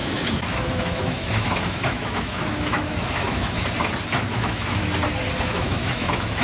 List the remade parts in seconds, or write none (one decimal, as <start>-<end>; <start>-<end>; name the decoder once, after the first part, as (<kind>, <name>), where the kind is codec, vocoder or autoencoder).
0.0-3.6 (autoencoder, DAC-VAE); 4.3-4.8; 5.4-6.4